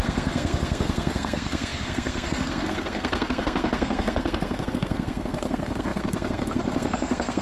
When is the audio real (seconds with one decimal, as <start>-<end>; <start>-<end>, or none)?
none